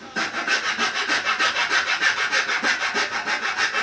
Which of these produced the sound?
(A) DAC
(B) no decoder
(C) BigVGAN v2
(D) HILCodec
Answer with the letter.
B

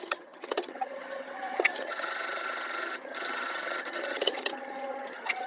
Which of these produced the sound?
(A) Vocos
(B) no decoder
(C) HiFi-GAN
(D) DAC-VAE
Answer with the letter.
C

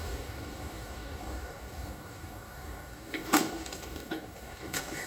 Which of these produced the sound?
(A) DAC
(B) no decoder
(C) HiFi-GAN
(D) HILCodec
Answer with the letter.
A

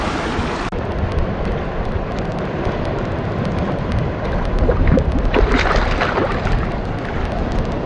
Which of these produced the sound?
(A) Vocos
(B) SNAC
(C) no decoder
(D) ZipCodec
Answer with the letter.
C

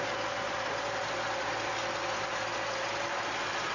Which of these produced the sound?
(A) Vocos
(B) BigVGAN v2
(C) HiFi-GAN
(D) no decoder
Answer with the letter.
D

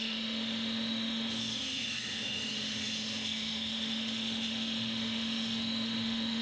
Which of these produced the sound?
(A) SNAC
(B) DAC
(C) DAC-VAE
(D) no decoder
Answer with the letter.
C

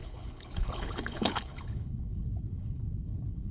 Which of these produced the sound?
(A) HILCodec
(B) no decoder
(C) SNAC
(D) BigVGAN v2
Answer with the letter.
A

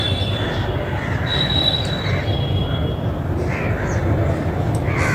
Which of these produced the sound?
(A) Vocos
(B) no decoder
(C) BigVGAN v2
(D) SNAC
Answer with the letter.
B